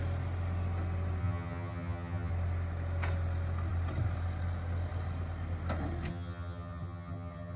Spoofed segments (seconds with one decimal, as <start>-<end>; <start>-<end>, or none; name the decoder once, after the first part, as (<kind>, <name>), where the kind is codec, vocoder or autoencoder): 1.2-2.3 (vocoder, HiFi-GAN); 6.1-7.6

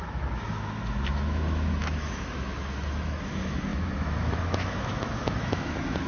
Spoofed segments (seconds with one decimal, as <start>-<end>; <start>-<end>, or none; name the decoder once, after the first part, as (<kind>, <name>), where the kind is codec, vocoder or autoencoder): 0.0-6.1 (autoencoder, DAC-VAE)

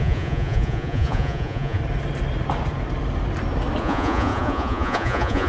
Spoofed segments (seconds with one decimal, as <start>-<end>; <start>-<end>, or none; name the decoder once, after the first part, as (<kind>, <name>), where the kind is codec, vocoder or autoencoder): 0.0-1.8 (vocoder, Vocos); 3.8-5.5

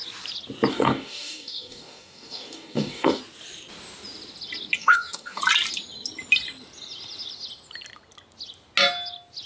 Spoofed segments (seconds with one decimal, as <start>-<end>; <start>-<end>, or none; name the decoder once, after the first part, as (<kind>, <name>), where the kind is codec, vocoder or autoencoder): 0.7-3.2 (codec, DAC); 4.8-5.4

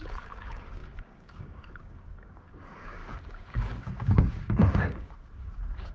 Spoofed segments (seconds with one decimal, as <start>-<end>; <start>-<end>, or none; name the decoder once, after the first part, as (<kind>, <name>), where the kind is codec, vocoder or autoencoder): 0.0-5.9 (codec, DAC)